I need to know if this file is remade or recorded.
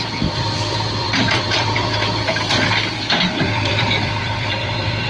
remade